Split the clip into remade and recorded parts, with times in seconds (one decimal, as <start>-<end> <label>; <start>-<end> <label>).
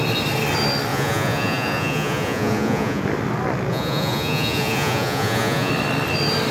0.0-0.9 recorded; 0.9-3.0 remade; 3.0-3.7 recorded; 3.7-5.7 remade; 5.7-6.5 recorded